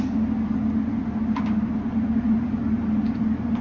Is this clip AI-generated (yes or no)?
no